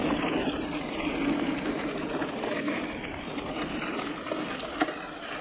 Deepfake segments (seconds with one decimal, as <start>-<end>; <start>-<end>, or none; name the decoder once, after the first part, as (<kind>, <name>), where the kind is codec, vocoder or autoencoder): none